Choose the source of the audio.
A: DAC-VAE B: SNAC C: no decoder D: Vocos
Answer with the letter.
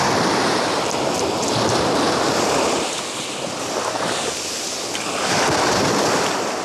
C